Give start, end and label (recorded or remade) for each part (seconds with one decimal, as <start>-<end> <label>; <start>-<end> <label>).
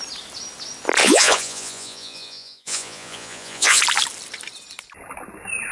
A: 0.0-1.0 recorded; 1.0-3.8 remade; 3.8-5.7 recorded